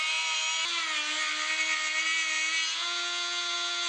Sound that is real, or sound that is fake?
real